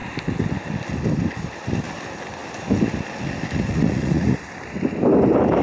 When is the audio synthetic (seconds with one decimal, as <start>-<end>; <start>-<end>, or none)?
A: 3.7-4.4